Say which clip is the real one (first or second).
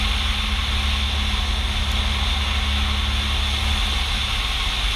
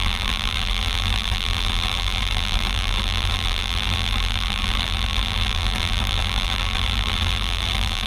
first